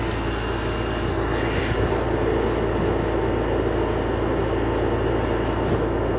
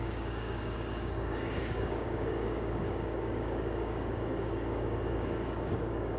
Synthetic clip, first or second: second